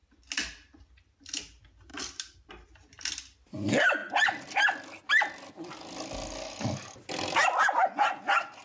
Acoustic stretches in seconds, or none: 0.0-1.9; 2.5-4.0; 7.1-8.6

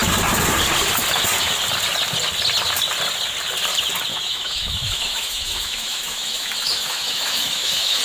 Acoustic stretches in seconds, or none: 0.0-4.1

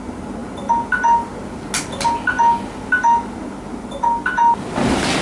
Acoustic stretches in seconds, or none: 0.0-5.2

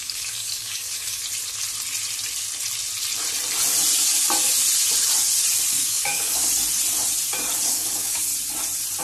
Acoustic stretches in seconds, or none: 1.2-5.7; 6.4-7.7; 8.3-9.0

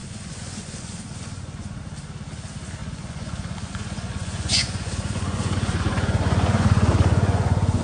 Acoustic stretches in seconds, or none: 1.8-2.8

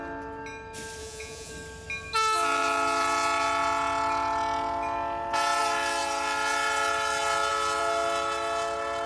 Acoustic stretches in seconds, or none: 0.0-1.0; 1.5-9.1

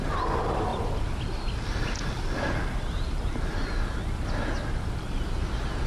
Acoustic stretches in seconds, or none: 0.0-0.7; 1.9-5.9

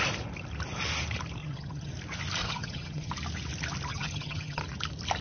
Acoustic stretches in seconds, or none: 0.0-1.4; 1.9-2.4; 3.1-3.9; 4.6-5.2